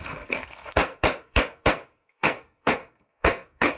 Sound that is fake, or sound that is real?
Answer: fake